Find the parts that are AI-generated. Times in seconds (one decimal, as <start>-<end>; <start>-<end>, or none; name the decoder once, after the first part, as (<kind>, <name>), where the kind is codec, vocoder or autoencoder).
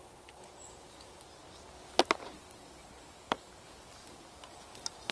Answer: none